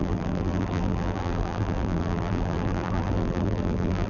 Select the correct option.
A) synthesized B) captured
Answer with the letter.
A